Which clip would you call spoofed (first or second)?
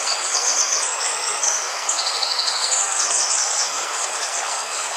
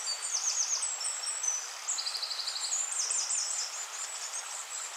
first